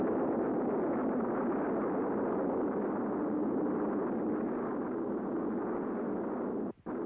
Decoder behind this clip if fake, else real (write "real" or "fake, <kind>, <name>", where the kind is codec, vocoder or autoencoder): real